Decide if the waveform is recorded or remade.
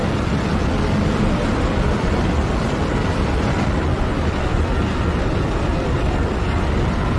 recorded